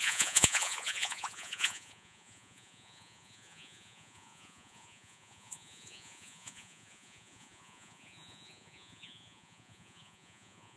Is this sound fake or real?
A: fake